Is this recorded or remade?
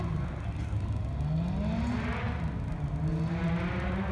recorded